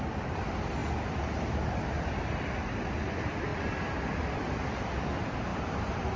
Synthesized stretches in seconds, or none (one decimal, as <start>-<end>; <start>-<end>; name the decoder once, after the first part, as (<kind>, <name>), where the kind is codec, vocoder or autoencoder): none